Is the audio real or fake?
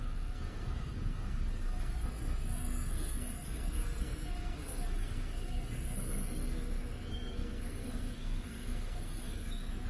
fake